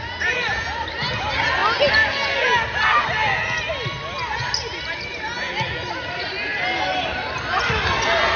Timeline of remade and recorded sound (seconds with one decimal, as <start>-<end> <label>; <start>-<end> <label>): 0.0-8.4 recorded

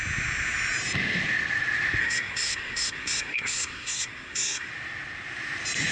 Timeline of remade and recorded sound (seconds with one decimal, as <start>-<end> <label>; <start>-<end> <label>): 0.0-2.0 recorded; 2.0-4.7 remade; 4.7-5.9 recorded

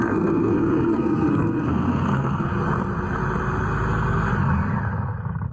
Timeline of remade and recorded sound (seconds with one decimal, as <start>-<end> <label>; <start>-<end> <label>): 0.0-2.5 remade; 2.5-5.5 recorded

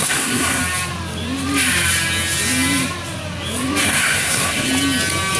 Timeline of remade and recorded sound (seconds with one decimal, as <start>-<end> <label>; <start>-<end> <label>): 0.0-0.6 remade; 0.6-3.8 recorded; 3.8-4.7 remade; 4.7-5.4 recorded